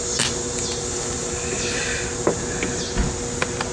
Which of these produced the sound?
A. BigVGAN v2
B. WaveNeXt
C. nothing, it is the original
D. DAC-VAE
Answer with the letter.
C